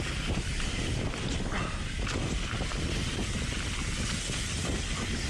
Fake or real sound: real